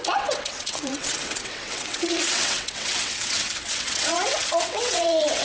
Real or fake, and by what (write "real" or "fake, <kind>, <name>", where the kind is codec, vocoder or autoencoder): fake, vocoder, WaveNeXt